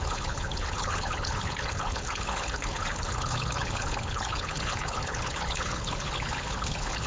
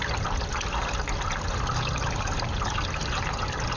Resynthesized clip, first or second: first